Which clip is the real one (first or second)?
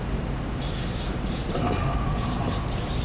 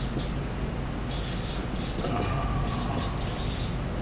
second